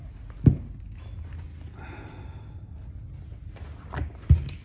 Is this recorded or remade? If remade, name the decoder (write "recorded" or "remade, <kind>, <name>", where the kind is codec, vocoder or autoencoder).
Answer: recorded